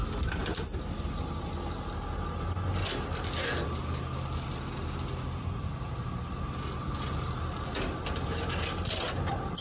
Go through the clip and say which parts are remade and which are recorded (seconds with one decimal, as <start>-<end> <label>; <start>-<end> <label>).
0.0-9.6 recorded